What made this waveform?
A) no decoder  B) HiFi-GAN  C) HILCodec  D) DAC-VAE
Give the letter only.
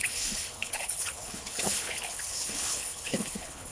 C